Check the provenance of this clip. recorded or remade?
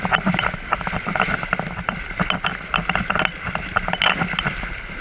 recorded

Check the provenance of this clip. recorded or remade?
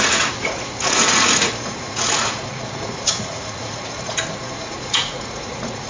remade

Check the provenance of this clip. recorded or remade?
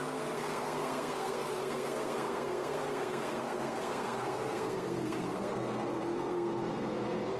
remade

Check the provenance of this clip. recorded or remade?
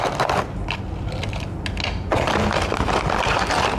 recorded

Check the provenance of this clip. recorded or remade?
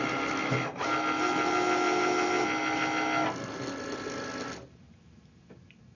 recorded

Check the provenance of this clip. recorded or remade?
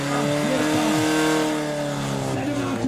recorded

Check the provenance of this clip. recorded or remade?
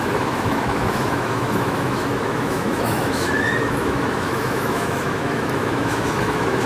remade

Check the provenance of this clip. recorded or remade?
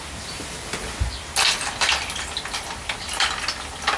recorded